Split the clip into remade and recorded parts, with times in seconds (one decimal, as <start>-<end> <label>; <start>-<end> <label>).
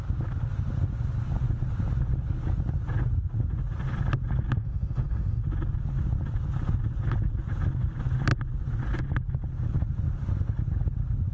0.0-4.6 recorded; 4.6-5.4 remade; 5.4-11.3 recorded